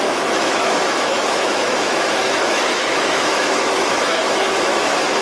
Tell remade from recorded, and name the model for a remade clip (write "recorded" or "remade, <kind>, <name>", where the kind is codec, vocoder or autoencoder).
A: remade, autoencoder, DAC-VAE